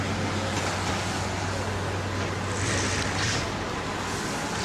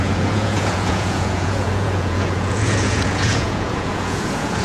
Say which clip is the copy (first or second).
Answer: second